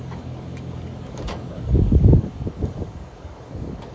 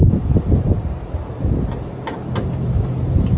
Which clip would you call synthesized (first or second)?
first